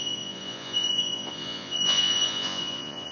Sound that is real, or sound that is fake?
fake